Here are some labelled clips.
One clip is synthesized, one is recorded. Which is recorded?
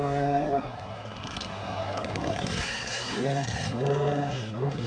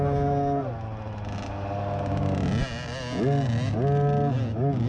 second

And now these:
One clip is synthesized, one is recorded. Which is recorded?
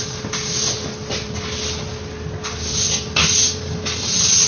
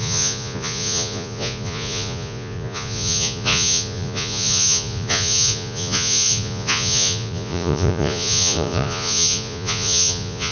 first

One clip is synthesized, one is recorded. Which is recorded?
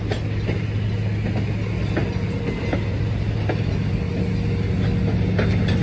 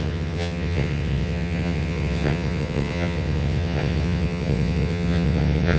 first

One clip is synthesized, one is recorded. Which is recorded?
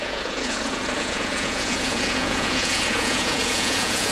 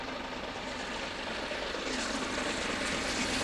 second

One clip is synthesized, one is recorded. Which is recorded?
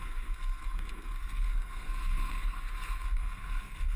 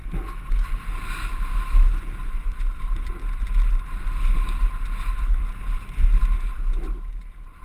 second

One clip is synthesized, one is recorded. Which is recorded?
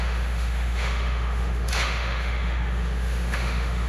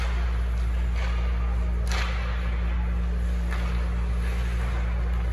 second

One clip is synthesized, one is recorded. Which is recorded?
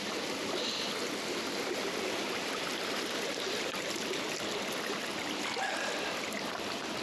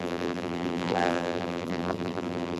first